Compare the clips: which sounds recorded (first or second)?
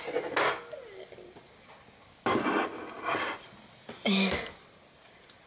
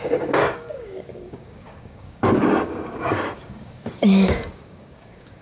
first